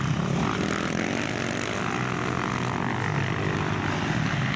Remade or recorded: recorded